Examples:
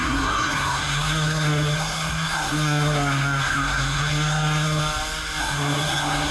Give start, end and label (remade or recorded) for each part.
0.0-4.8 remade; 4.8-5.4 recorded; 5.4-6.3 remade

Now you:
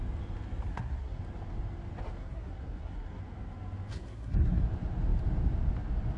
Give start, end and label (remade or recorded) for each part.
0.0-0.7 recorded; 0.7-1.2 remade; 1.2-2.2 recorded; 2.2-3.2 remade; 3.2-3.9 recorded; 3.9-4.6 remade; 4.6-6.2 recorded

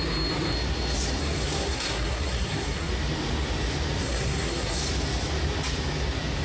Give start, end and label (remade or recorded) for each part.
0.0-1.2 recorded; 1.2-2.9 remade; 2.9-4.0 recorded; 4.0-4.8 remade; 4.8-6.4 recorded

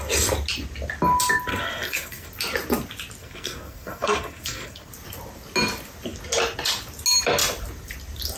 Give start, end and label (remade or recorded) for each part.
0.0-1.5 recorded; 1.5-2.3 remade; 2.3-3.2 recorded; 3.2-4.9 remade; 4.9-8.4 recorded